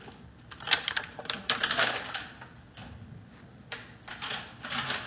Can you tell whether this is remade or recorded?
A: recorded